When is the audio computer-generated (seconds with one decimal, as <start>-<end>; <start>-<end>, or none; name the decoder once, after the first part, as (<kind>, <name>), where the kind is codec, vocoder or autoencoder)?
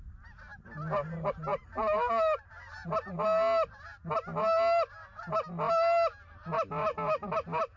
none